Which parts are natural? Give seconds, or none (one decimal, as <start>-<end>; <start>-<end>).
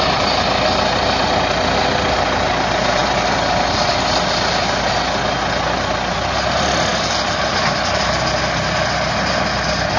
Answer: 0.0-10.0